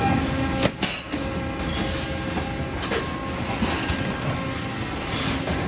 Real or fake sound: real